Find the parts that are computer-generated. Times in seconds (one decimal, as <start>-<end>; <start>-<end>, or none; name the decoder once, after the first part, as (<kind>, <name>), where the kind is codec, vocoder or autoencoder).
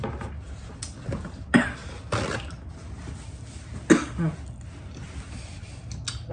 none